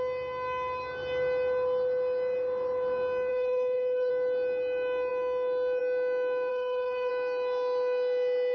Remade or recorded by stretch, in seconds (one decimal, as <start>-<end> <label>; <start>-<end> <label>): 0.0-3.3 recorded; 3.3-4.1 remade; 4.1-6.5 recorded; 6.5-7.1 remade; 7.1-8.5 recorded